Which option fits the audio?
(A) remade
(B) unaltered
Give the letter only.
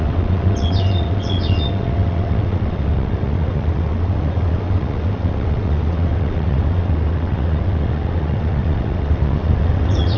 A